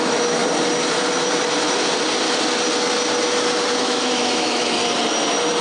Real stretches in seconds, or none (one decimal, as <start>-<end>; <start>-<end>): 0.4-3.8; 4.8-5.6